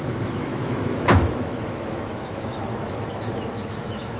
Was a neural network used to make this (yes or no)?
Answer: yes